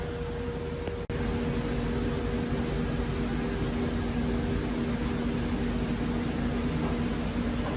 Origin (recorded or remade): recorded